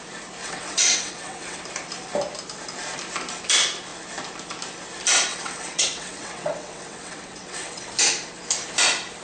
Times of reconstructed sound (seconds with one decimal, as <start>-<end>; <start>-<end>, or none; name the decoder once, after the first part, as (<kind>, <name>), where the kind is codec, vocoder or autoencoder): 0.4-1.6 (vocoder, WaveNeXt); 5.3-7.9